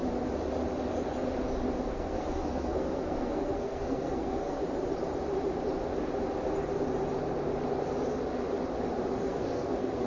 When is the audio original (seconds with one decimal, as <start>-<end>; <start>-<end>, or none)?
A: 0.0-1.8; 4.6-9.2